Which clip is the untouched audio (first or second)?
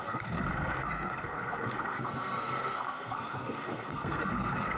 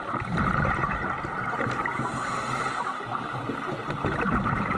second